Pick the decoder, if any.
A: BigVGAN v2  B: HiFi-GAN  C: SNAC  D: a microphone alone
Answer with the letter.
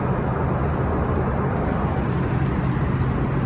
D